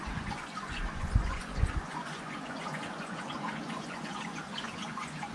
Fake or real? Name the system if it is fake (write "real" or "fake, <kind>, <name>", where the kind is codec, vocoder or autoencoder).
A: fake, vocoder, Vocos